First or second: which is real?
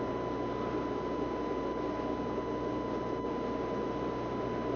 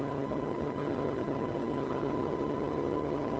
first